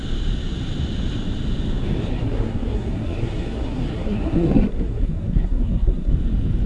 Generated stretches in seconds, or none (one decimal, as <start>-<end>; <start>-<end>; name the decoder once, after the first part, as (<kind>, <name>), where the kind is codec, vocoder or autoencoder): 2.1-6.1 (codec, SNAC)